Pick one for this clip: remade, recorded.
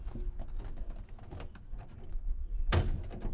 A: recorded